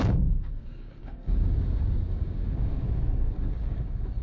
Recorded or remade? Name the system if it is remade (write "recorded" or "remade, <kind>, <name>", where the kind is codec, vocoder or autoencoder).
remade, codec, DAC